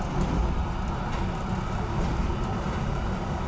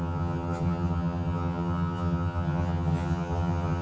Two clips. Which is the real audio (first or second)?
first